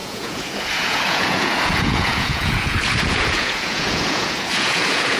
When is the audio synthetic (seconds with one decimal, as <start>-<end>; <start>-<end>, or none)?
0.0-5.2